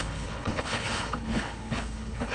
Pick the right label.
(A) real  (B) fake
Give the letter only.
B